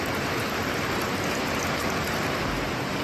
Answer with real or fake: real